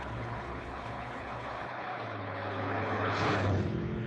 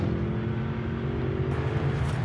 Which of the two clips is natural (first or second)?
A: second